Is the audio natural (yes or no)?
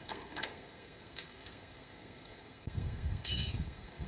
no